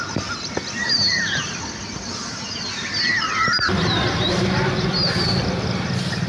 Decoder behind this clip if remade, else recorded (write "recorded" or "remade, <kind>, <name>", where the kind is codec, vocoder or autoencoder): recorded